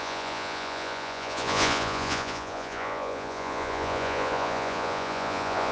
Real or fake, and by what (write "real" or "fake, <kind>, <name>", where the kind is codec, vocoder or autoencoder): fake, vocoder, Vocos